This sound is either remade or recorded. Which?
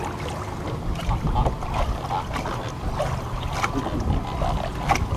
recorded